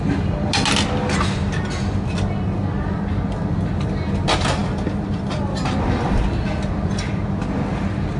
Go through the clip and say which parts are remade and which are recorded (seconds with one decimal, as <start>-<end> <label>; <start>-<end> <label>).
0.0-8.2 recorded